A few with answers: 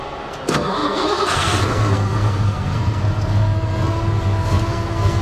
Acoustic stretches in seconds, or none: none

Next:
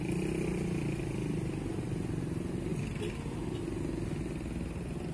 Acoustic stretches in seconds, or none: 0.0-5.1